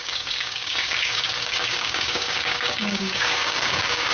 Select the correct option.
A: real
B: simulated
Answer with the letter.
B